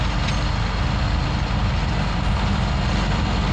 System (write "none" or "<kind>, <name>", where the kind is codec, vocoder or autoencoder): none